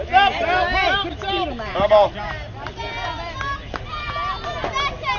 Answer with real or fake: real